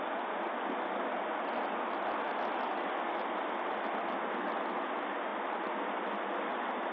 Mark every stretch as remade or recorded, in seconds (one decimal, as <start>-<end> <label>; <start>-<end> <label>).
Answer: 0.0-6.9 recorded